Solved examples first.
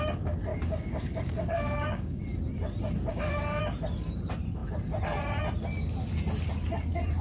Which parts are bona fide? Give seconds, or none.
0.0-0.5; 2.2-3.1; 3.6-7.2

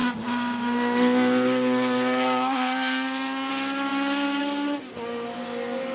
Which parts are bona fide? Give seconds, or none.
3.5-5.9

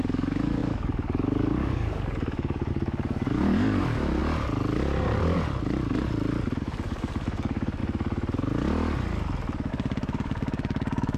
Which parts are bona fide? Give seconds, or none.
4.2-6.6; 7.8-9.7